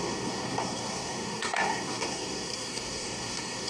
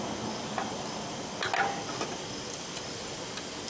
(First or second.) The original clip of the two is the second